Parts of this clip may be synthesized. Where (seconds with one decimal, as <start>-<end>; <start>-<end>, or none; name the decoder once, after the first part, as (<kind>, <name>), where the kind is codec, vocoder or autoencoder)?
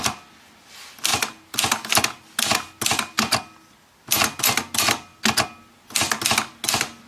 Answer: none